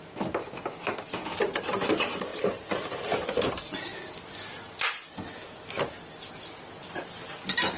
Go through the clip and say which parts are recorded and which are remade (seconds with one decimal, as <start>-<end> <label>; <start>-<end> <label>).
0.0-7.8 recorded